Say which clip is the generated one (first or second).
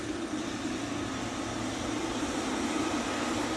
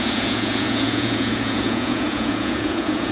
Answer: second